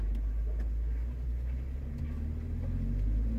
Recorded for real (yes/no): yes